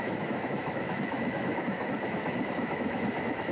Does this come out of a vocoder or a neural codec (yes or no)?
yes